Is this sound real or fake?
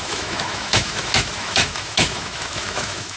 fake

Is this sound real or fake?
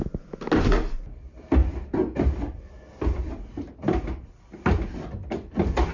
real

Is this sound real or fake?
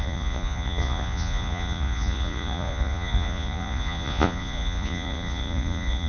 fake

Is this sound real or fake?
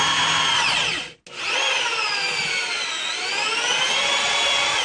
real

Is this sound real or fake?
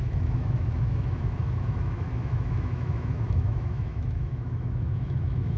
fake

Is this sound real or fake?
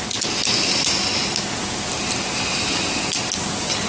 real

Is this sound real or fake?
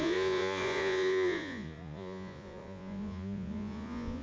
fake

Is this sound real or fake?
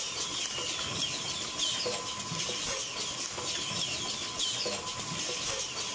real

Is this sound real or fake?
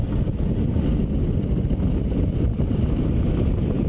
real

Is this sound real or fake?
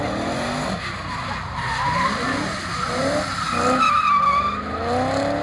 real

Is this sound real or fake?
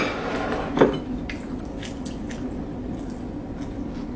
real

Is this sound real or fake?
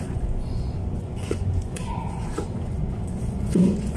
fake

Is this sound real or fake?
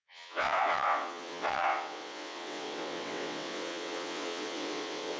fake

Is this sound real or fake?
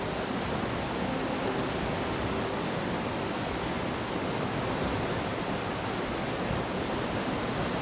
real